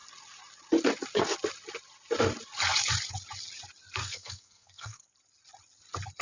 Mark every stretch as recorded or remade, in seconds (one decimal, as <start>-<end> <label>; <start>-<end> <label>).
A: 0.0-4.0 recorded; 4.0-5.0 remade; 5.0-6.2 recorded